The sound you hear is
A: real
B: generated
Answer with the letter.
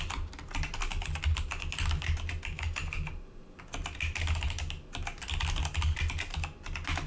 A